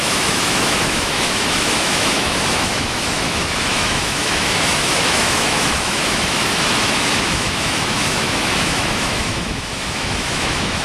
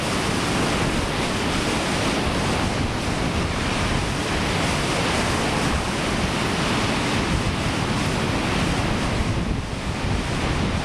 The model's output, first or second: first